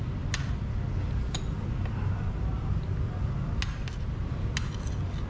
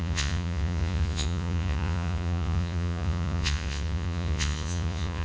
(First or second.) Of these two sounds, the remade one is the second